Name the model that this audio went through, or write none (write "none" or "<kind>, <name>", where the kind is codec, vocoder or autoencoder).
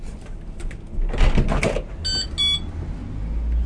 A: none